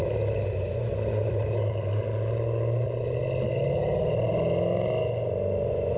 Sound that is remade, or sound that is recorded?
recorded